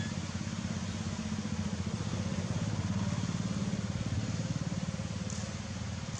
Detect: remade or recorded recorded